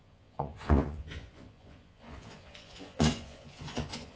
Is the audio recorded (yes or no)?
no